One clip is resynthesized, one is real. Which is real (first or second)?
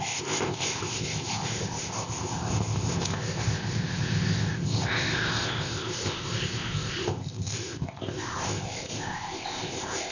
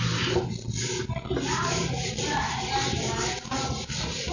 second